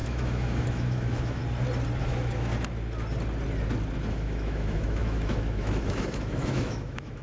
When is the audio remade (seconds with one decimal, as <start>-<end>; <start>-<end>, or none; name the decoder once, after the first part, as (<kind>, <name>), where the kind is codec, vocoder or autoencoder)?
0.0-1.4 (autoencoder, DAC-VAE); 2.0-2.5; 4.1-7.2